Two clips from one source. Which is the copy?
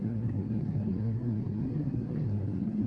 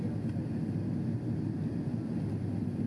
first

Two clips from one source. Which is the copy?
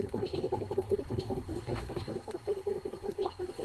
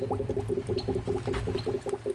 first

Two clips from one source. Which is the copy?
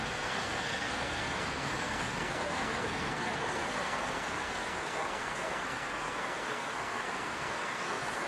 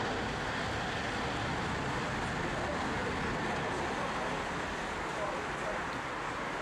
first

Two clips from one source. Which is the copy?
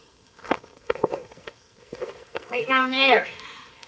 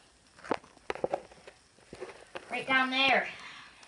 first